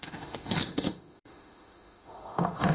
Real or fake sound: fake